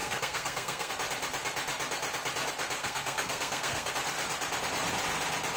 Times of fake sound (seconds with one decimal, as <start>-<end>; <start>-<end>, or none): 0.0-0.9; 2.8-3.9